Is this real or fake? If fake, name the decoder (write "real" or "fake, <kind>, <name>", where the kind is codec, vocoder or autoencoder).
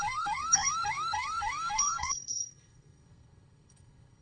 fake, codec, SNAC